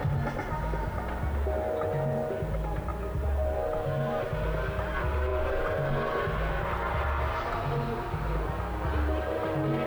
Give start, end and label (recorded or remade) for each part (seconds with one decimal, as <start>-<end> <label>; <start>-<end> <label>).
0.0-9.9 recorded